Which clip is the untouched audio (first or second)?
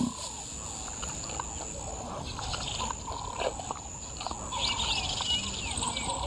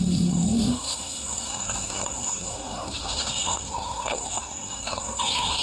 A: first